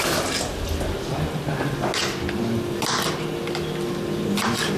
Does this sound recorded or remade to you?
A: recorded